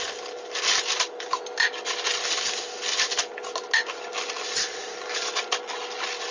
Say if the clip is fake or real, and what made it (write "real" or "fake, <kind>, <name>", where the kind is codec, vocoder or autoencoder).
real